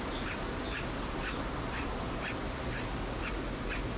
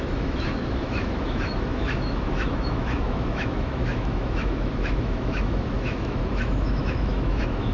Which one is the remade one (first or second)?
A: second